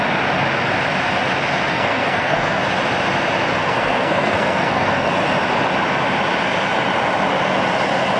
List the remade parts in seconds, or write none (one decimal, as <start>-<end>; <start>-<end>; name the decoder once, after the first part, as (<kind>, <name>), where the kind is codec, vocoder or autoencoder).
1.7-2.6 (codec, SNAC); 3.6-5.1